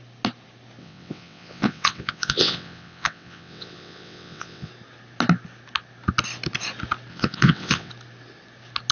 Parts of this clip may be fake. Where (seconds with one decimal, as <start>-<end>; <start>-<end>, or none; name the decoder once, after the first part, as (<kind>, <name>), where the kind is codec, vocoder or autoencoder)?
0.8-4.7 (vocoder, WaveNeXt); 7.1-7.9